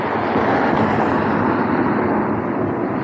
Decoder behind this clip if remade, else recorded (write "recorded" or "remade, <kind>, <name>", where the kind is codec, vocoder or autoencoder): recorded